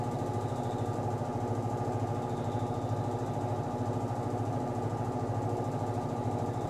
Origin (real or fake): real